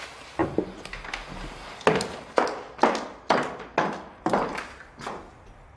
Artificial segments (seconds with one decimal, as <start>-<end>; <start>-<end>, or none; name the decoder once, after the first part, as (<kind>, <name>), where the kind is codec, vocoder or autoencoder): none